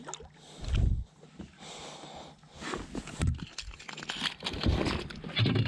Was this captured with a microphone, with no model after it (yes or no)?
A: yes